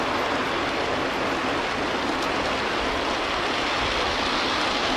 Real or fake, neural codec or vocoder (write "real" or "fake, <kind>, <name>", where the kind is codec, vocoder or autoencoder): real